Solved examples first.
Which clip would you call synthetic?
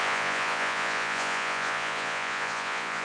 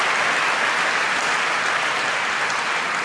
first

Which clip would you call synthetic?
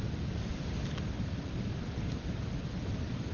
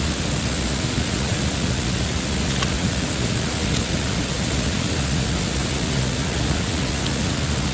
second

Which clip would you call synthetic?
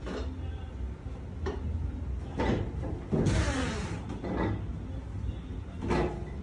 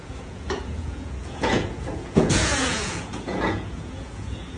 second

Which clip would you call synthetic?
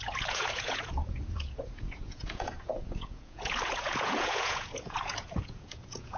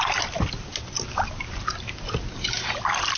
first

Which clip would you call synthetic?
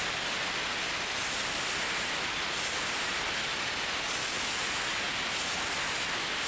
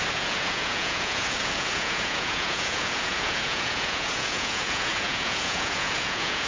second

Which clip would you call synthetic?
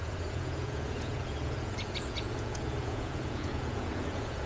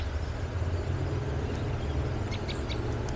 first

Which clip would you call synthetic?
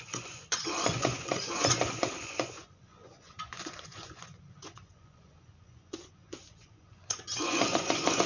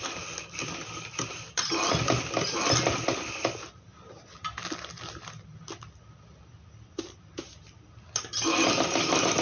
first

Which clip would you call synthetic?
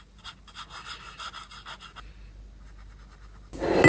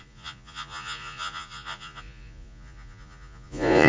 second